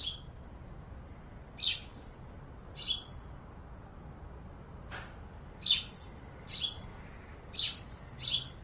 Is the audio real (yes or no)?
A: yes